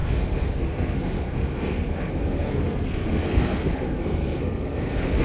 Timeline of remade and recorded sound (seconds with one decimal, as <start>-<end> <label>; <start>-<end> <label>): 0.0-5.2 remade